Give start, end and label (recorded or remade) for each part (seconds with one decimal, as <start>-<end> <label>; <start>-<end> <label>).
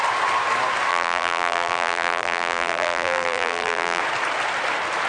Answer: 0.0-0.9 recorded; 0.9-4.0 remade; 4.0-5.1 recorded